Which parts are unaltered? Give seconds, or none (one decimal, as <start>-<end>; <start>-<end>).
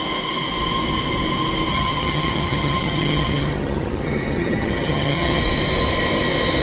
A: 0.0-1.7; 5.4-6.6